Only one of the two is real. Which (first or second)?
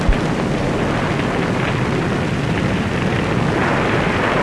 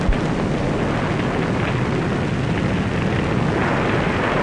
second